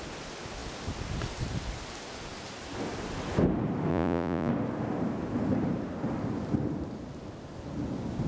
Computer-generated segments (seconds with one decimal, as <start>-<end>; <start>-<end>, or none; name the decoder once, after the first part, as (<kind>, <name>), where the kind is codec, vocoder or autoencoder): 3.9-4.5 (vocoder, Vocos)